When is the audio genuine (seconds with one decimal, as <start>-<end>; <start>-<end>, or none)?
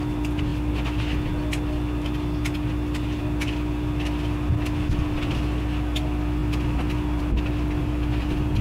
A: 0.0-8.6